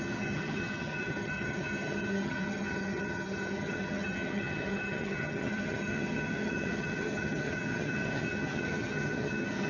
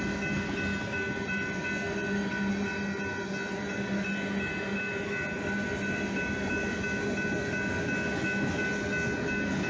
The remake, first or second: first